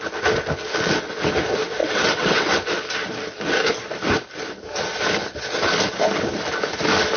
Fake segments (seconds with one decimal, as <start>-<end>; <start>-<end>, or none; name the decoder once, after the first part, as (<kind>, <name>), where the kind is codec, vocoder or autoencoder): 1.8-2.5 (vocoder, WaveNeXt)